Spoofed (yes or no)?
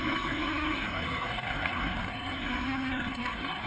yes